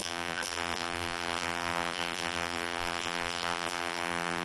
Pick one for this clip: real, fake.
fake